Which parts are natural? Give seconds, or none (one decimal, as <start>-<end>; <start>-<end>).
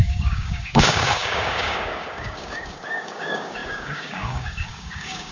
none